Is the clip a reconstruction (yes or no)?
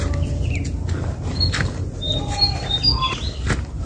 no